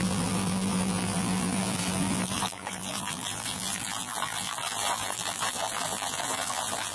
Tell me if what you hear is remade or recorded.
remade